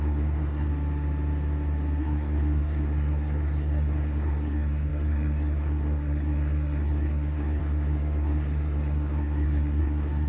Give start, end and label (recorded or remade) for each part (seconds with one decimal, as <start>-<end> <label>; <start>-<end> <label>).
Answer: 0.0-0.7 remade; 0.7-2.0 recorded; 2.0-10.3 remade